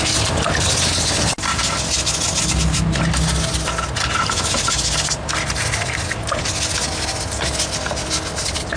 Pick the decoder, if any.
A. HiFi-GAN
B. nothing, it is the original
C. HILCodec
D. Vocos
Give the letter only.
B